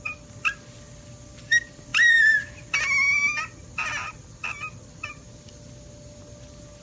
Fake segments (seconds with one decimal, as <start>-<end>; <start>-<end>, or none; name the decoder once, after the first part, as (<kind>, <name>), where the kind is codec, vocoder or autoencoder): none